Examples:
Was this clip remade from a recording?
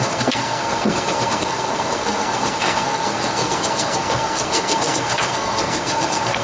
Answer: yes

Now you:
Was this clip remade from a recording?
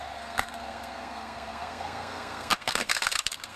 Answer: yes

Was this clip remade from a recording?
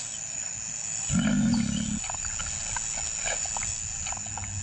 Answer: no